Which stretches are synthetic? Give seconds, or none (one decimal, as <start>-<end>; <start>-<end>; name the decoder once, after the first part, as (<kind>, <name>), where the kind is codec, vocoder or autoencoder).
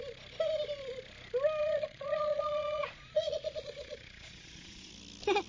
1.6-4.9 (vocoder, Vocos)